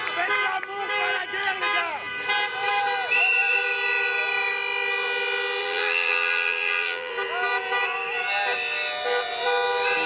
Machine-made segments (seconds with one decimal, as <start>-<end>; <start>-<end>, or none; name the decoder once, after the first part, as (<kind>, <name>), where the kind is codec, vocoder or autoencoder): 5.6-7.1 (vocoder, BigVGAN v2)